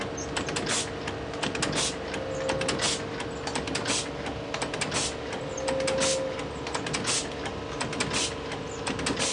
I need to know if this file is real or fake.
real